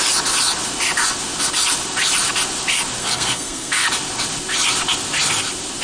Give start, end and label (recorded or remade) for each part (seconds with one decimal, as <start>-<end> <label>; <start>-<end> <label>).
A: 0.0-3.0 recorded; 3.0-3.7 remade; 3.7-5.8 recorded

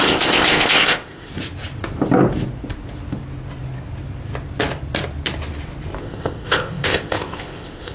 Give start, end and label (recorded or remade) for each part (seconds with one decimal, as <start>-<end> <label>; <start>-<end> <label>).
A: 0.0-1.3 remade; 1.3-6.0 recorded; 6.0-7.9 remade

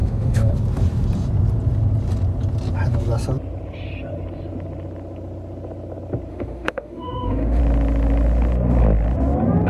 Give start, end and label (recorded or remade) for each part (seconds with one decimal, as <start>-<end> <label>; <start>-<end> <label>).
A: 0.0-0.5 remade; 0.5-6.3 recorded; 6.3-7.6 remade; 7.6-9.7 recorded

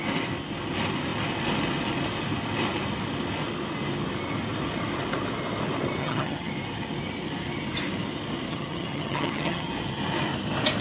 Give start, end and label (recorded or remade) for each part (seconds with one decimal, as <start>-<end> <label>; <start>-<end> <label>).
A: 0.0-6.0 recorded; 6.0-6.5 remade; 6.5-8.5 recorded; 8.5-9.7 remade; 9.7-10.8 recorded